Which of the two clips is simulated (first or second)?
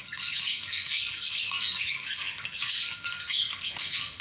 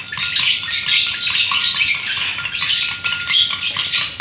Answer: first